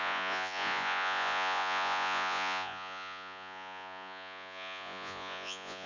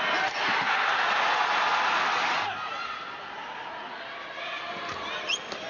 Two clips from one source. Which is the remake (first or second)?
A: first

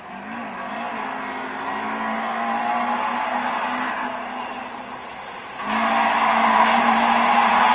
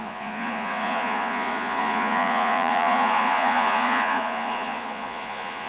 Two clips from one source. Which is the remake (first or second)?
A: second